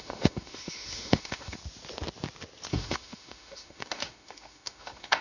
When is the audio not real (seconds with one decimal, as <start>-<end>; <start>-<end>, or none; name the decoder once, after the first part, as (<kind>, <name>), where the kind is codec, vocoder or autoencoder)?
0.0-1.6 (autoencoder, DAC-VAE); 2.7-5.2